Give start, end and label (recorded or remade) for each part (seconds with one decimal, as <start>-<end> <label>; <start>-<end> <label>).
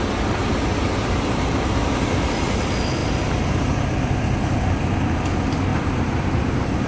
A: 0.0-0.4 recorded; 0.4-2.3 remade; 2.3-3.0 recorded; 3.0-3.8 remade; 3.8-5.7 recorded; 5.7-6.9 remade